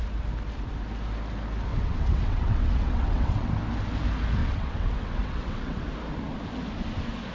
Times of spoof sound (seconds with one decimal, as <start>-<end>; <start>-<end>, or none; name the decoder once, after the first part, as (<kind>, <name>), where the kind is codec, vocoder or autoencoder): 1.7-3.5 (vocoder, WaveNeXt); 4.4-5.8